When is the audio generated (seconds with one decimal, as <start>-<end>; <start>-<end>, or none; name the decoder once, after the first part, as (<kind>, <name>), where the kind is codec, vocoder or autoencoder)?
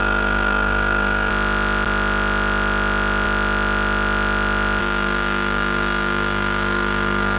0.0-1.3 (codec, DAC); 4.8-7.4